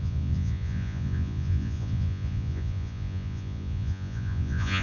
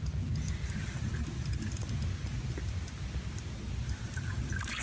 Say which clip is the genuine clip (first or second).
second